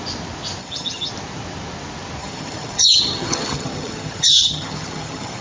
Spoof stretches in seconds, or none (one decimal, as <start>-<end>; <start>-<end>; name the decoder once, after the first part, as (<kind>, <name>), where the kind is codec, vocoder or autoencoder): 0.6-1.1 (vocoder, HiFi-GAN); 2.2-5.4